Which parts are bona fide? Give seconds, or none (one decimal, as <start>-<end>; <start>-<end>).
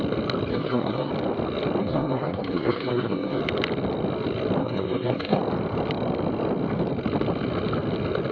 0.0-0.5; 1.1-1.8; 3.4-4.6; 5.4-8.3